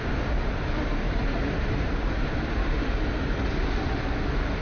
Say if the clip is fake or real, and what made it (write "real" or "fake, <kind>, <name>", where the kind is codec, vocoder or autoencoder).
fake, vocoder, BigVGAN v2